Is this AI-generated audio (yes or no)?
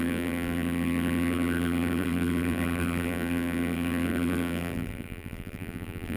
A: yes